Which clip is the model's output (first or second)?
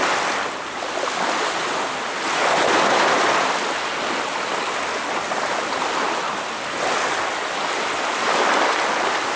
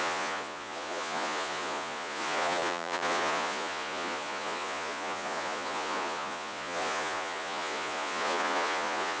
second